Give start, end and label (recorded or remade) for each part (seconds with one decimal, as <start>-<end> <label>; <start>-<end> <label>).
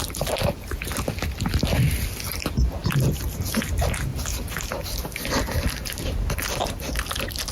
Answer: 0.0-4.1 recorded; 4.1-7.1 remade; 7.1-7.5 recorded